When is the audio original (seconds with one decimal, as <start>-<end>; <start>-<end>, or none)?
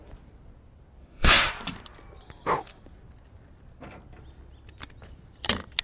0.0-1.0; 1.5-5.8